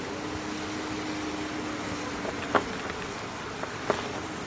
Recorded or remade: recorded